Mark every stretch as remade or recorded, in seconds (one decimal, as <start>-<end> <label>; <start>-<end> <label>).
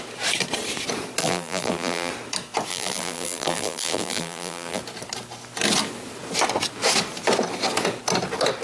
0.0-1.2 recorded; 1.2-2.1 remade; 2.1-2.7 recorded; 2.7-4.8 remade; 4.8-8.6 recorded